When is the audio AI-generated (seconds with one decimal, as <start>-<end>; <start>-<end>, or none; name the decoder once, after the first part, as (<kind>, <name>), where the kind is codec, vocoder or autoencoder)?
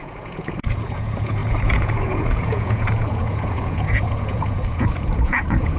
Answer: 0.0-5.8 (vocoder, Vocos)